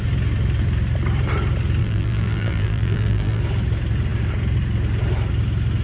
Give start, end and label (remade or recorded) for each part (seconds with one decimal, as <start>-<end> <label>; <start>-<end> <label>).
0.0-1.8 recorded; 1.8-3.4 remade; 3.4-5.8 recorded